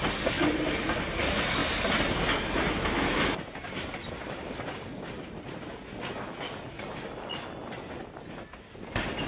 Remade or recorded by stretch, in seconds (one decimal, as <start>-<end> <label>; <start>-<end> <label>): 0.0-9.3 recorded